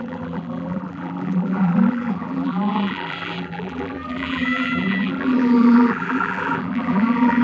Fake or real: fake